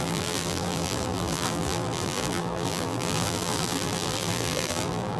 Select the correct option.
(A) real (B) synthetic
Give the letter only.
B